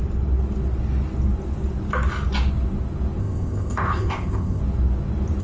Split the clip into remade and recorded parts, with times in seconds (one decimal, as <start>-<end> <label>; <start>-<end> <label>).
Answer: 0.0-3.2 recorded; 3.2-4.6 remade; 4.6-5.4 recorded